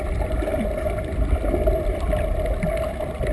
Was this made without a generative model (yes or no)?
yes